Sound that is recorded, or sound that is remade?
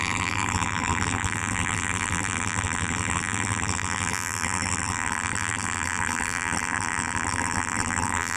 remade